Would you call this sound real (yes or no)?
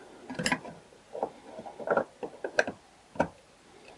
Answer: yes